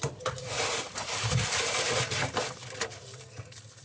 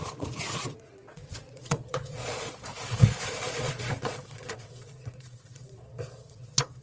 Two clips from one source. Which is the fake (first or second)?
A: second